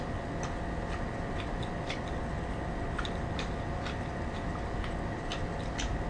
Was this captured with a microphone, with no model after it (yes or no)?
yes